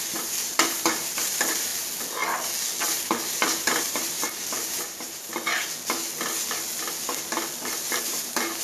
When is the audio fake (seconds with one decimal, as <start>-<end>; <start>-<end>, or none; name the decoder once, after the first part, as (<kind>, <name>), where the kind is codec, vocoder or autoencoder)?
0.0-1.7 (vocoder, BigVGAN v2); 2.8-5.5; 8.0-8.6